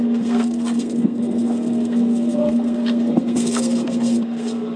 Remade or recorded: remade